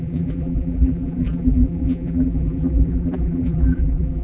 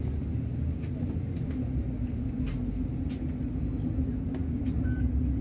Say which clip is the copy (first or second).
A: first